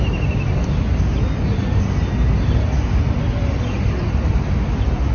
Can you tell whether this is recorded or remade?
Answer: recorded